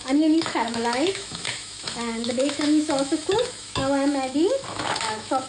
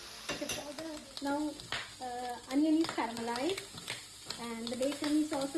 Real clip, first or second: second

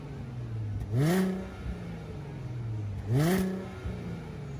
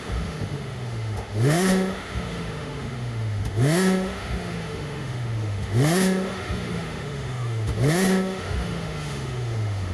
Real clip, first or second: first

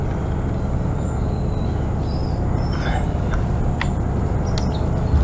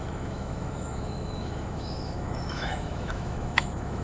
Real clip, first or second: first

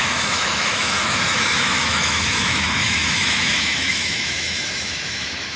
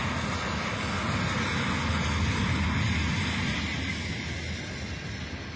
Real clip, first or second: second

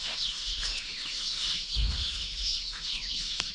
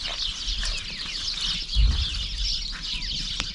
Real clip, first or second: second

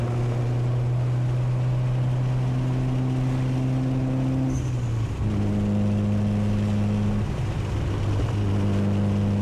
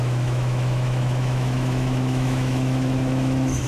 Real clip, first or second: first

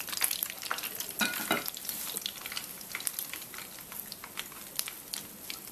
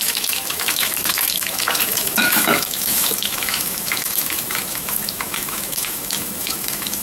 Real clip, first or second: first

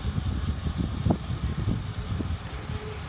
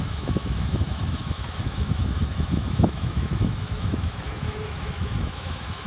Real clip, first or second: first